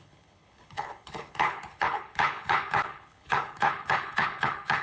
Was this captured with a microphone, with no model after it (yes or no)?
no